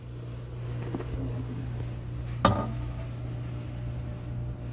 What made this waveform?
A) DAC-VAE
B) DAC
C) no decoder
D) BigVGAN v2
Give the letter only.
C